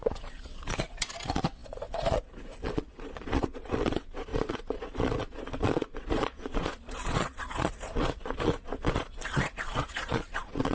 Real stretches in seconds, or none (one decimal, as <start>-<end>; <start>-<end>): none